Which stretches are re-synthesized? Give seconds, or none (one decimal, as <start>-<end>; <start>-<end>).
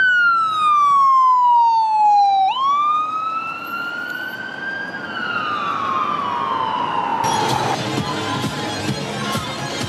none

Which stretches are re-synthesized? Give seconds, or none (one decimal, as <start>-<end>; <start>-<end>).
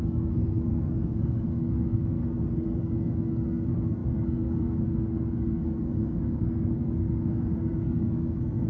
0.0-8.7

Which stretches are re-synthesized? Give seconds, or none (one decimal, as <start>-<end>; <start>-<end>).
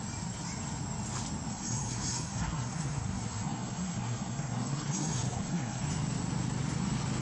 1.5-5.8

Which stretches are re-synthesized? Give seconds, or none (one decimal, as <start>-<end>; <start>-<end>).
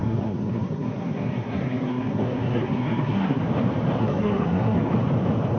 0.0-3.4; 4.0-4.9